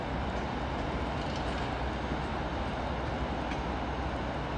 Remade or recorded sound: recorded